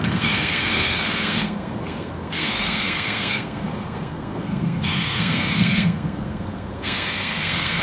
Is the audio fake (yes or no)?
yes